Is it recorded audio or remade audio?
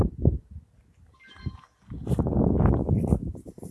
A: recorded